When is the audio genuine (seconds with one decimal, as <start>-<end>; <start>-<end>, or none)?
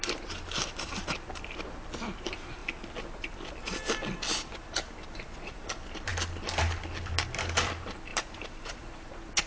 0.0-8.1; 9.1-9.5